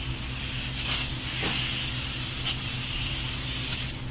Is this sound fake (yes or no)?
no